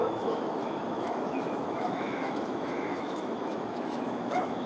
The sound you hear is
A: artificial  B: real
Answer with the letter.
A